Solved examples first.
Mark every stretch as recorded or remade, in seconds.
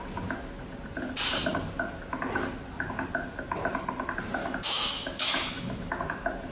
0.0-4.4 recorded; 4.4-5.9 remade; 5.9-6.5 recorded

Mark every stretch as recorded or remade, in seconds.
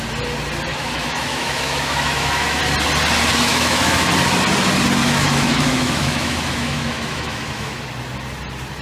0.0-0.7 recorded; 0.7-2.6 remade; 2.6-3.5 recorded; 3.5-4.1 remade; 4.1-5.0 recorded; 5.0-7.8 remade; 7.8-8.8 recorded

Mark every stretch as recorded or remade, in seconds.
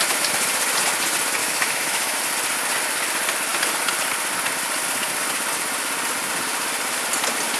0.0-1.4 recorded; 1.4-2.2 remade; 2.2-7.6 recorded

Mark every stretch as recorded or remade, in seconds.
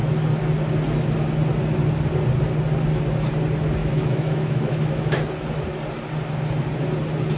0.0-3.8 recorded; 3.8-5.1 remade; 5.1-7.4 recorded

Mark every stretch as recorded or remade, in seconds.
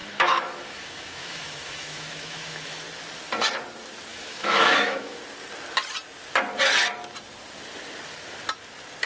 0.0-2.8 remade; 2.8-4.1 recorded; 4.1-5.2 remade; 5.2-9.1 recorded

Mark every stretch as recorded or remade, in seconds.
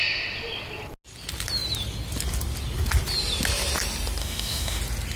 0.0-4.2 recorded; 4.2-4.8 remade; 4.8-5.2 recorded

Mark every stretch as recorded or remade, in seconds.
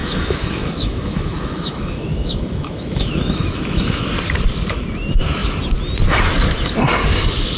0.0-4.0 remade; 4.0-7.6 recorded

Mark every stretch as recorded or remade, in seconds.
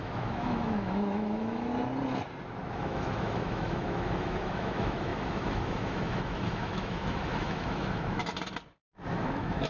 0.0-1.7 remade; 1.7-2.8 recorded; 2.8-8.2 remade; 8.2-9.1 recorded; 9.1-9.7 remade